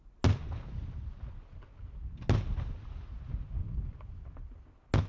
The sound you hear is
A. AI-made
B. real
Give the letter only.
B